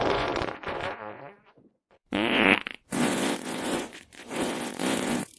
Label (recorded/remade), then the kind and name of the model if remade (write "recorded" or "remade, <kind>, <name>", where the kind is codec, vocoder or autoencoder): remade, vocoder, Vocos